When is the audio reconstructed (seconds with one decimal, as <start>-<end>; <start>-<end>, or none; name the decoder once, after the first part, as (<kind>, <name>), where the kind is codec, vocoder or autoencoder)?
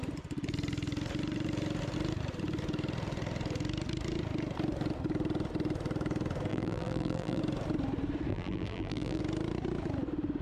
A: 6.5-7.4 (vocoder, BigVGAN v2); 8.3-9.2